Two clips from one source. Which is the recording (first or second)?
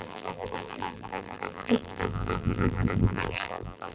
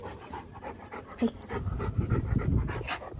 second